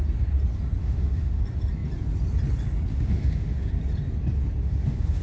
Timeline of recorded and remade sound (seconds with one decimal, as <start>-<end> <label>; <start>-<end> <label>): 0.0-0.8 recorded; 0.8-1.4 remade; 1.4-2.9 recorded; 2.9-3.7 remade; 3.7-4.6 recorded; 4.6-5.2 remade

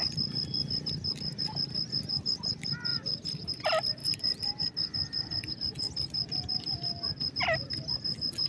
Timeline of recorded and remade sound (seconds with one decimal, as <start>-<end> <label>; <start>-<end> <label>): 0.0-8.5 recorded

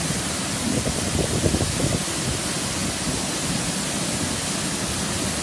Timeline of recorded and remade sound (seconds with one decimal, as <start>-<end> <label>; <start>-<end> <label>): 0.0-5.4 recorded

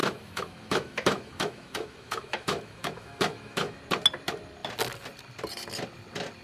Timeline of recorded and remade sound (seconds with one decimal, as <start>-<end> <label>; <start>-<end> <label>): 0.0-3.8 remade; 3.8-6.4 recorded

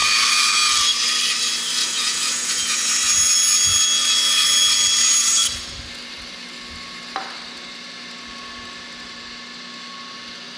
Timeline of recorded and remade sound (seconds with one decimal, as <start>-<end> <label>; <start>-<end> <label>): 0.0-1.8 recorded; 1.8-2.9 remade; 2.9-10.6 recorded

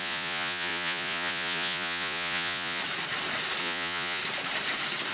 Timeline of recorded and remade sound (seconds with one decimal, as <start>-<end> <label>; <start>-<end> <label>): 0.0-2.8 remade; 2.8-3.6 recorded; 3.6-4.2 remade; 4.2-5.1 recorded